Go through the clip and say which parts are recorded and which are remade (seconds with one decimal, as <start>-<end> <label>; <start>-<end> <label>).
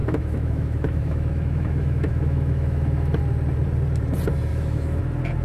0.0-3.2 remade; 3.2-4.5 recorded; 4.5-5.0 remade; 5.0-5.4 recorded